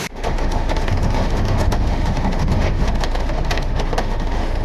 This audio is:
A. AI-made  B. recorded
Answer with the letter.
A